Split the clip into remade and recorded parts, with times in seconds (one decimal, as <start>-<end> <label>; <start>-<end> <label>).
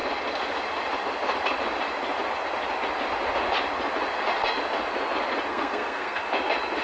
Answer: 0.0-5.5 recorded; 5.5-6.2 remade; 6.2-6.8 recorded